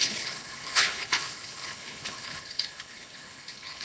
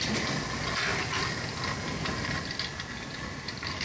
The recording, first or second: second